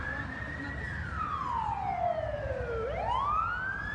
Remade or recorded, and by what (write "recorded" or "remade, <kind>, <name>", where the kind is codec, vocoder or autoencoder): recorded